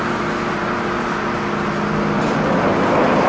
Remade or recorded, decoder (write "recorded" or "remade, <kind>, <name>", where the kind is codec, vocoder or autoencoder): recorded